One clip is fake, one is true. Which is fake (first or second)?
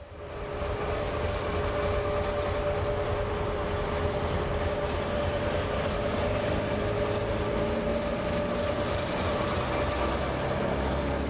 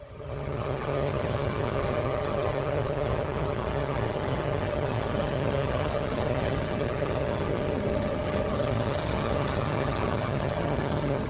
second